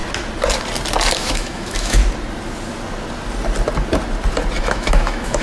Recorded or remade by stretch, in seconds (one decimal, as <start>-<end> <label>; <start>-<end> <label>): 0.0-1.1 recorded; 1.1-2.0 remade; 2.0-4.6 recorded; 4.6-5.4 remade